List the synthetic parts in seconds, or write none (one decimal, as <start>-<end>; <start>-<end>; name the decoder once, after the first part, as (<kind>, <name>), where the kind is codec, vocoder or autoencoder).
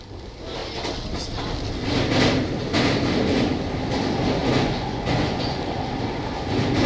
4.4-5.6 (vocoder, Vocos)